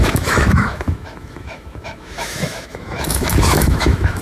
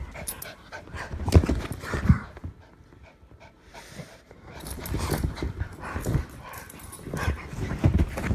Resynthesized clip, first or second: first